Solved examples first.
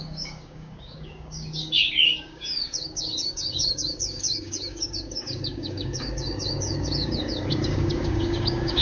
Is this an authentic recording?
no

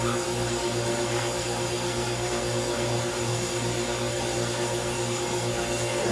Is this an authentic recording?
no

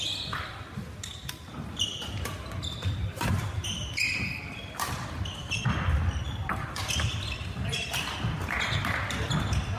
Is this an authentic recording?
no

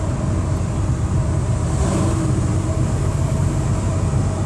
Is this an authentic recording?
yes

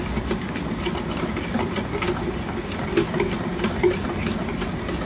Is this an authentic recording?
yes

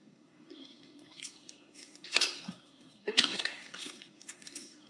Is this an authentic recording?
no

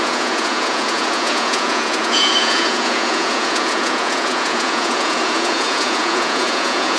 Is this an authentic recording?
no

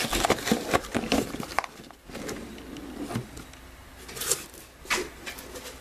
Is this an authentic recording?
yes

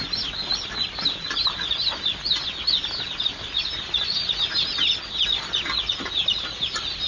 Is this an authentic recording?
yes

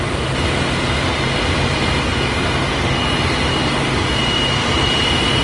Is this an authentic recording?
yes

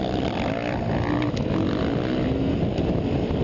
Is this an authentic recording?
yes